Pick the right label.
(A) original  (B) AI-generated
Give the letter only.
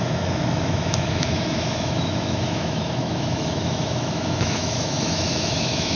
B